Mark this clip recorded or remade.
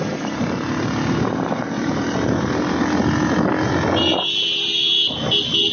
recorded